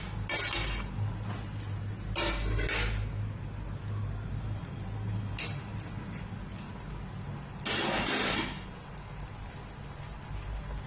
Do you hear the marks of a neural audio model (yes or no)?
no